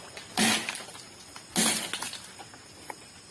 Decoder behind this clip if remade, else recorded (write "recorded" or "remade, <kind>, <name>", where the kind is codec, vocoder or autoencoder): recorded